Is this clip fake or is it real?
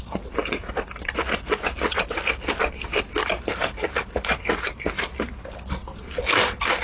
real